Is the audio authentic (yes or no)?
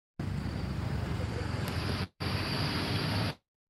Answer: no